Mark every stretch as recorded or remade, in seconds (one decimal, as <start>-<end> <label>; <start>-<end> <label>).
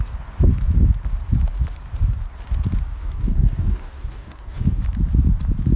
0.0-3.0 recorded; 3.0-4.8 remade; 4.8-5.8 recorded